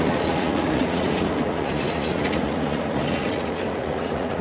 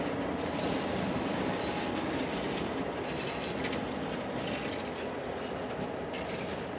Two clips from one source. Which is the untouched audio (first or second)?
second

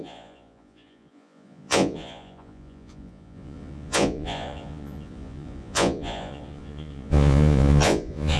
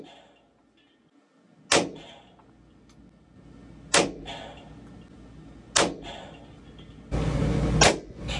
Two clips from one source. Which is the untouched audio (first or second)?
second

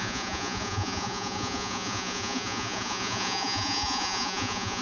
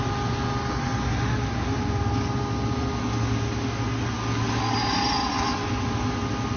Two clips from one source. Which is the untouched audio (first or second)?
second